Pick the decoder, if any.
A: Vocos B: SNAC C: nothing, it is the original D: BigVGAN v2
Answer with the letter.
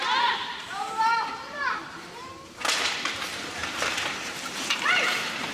D